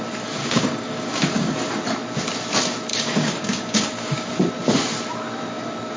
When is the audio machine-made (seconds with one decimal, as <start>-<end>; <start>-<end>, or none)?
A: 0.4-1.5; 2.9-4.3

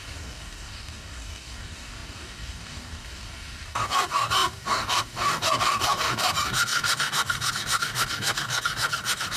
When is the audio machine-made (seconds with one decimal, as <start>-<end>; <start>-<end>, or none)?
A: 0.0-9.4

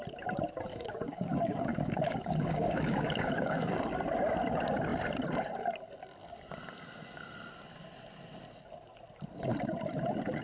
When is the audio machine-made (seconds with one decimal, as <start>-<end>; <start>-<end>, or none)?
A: 0.7-3.8

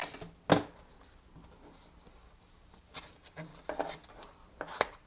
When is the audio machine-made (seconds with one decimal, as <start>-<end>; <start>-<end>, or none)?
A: 3.1-3.5